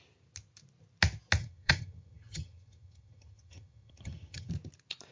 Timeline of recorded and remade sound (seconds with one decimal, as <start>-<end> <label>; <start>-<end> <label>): 0.0-1.4 recorded; 1.4-4.5 remade; 4.5-5.1 recorded